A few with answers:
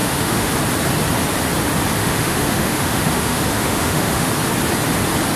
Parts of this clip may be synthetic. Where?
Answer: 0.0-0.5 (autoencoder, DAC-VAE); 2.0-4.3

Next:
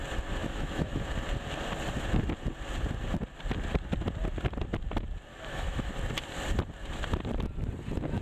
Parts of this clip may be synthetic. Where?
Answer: 0.4-1.0 (autoencoder, DAC-VAE); 5.3-5.9